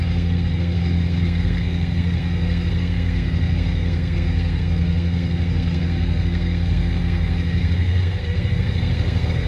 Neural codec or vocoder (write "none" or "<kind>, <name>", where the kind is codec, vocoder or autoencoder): codec, SNAC